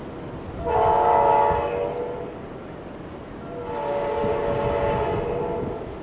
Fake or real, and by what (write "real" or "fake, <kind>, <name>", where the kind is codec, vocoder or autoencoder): real